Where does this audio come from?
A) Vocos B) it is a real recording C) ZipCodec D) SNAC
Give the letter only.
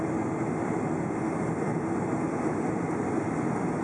B